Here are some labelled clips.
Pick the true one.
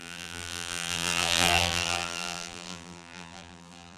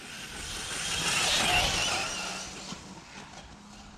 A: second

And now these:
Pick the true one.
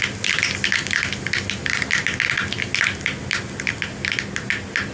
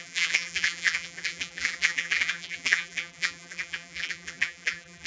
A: first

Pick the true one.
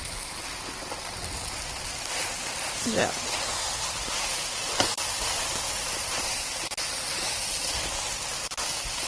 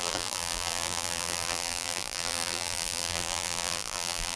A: first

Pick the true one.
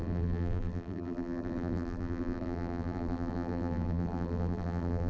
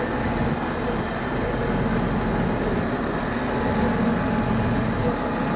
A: second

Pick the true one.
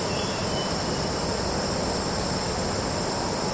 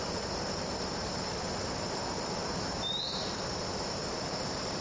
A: first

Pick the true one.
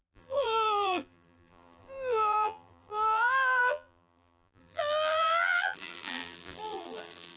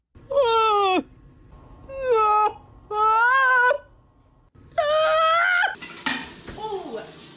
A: second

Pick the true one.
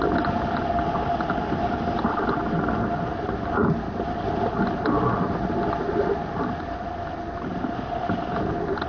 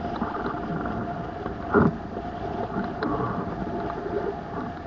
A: first